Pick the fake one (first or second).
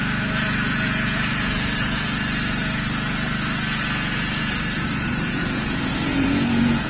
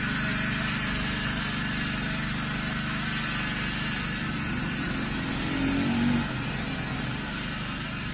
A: first